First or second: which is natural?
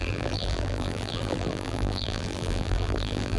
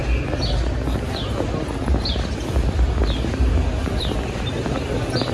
second